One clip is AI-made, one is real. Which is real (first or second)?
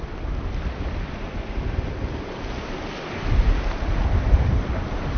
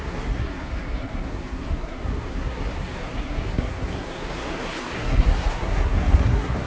first